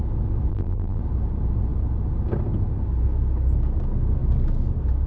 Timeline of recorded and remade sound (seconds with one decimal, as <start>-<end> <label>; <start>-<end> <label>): 0.0-0.5 recorded; 0.5-1.0 remade; 1.0-5.1 recorded